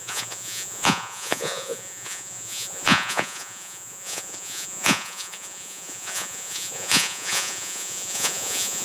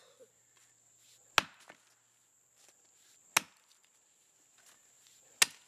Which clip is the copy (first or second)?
first